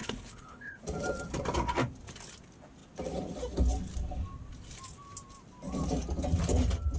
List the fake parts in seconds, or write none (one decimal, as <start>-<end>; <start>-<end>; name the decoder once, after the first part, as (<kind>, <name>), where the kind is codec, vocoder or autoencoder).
0.0-0.8 (codec, HILCodec)